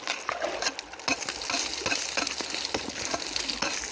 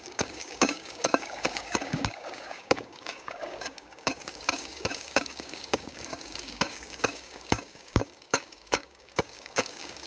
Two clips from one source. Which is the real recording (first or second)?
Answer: first